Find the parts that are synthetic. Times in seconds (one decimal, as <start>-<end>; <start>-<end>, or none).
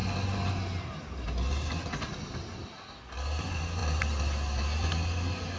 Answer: 3.4-3.8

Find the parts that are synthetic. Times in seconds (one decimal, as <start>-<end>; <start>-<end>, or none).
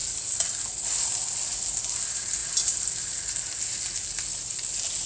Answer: none